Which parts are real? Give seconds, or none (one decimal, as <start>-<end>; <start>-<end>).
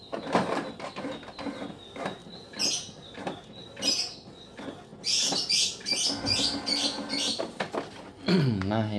0.0-9.0